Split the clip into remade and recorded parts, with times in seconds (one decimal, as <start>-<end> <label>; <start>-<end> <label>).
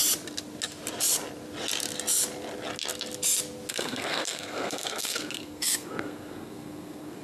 0.0-3.7 recorded; 3.7-7.2 remade